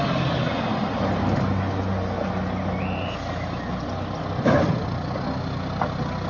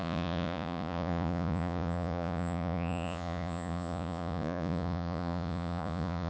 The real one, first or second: first